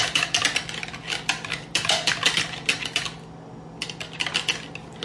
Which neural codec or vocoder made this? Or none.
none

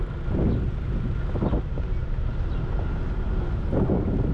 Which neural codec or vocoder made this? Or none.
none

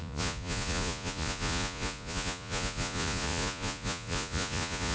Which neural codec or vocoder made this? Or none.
vocoder, Vocos